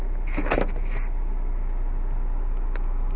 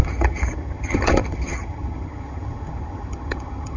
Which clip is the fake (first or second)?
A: second